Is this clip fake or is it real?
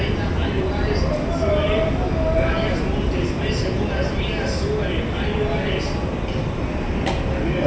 real